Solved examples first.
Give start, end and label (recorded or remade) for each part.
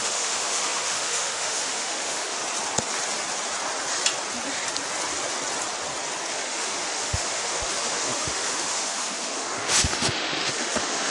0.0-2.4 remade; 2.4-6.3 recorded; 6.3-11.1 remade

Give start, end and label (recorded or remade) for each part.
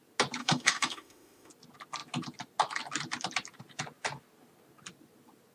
0.0-0.4 recorded; 0.4-1.5 remade; 1.5-5.5 recorded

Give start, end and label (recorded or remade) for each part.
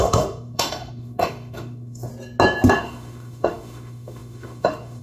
0.0-2.1 remade; 2.1-2.7 recorded; 2.7-5.0 remade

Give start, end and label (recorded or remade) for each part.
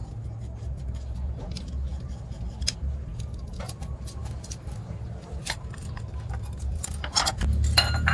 0.0-8.1 recorded